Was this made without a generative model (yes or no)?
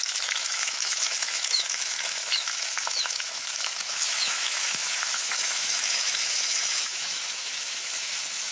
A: no